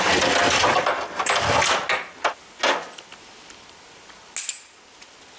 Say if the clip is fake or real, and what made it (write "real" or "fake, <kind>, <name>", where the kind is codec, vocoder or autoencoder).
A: real